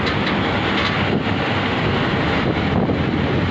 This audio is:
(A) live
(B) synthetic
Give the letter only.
A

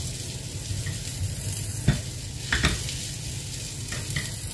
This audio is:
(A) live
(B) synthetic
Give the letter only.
A